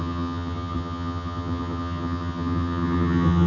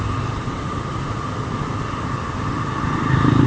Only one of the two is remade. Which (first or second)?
first